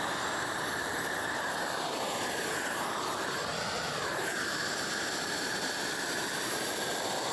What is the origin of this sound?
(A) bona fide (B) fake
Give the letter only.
B